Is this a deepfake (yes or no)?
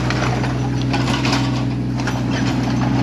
no